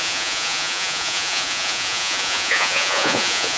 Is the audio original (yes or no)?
no